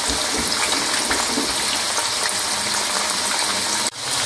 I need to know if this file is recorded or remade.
recorded